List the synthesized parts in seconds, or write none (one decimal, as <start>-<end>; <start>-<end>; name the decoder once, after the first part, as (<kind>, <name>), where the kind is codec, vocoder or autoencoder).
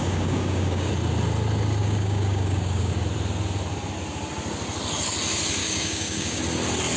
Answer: 0.0-0.9 (codec, DAC); 1.8-2.9; 5.6-6.4